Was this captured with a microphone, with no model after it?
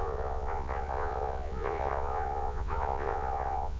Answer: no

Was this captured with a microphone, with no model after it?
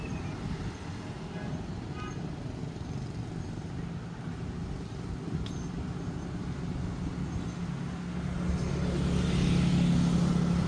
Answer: yes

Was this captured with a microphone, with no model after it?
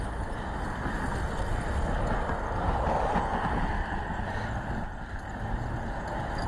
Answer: yes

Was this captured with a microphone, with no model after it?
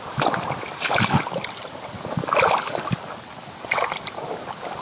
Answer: yes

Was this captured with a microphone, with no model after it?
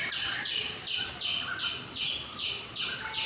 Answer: yes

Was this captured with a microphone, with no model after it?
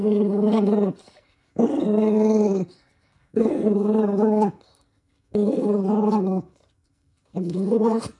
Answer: no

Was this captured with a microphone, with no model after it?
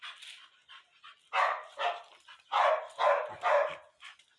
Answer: yes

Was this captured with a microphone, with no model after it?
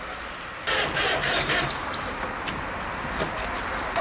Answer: yes